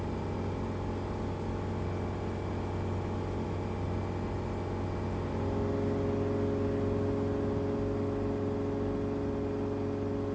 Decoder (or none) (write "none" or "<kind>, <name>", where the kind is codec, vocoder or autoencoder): none